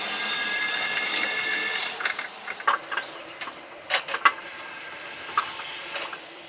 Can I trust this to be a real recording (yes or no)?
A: yes